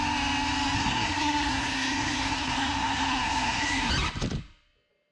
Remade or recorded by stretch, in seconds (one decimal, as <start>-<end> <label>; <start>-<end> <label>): 0.0-0.8 recorded; 0.8-3.9 remade; 3.9-5.1 recorded